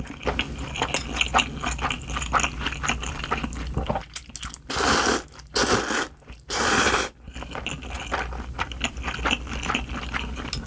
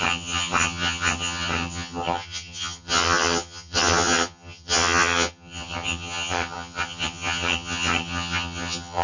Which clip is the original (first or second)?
first